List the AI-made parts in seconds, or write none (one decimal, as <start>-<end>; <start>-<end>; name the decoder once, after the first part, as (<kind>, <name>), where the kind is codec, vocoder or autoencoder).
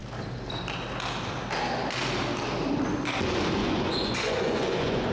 3.6-5.1 (vocoder, Vocos)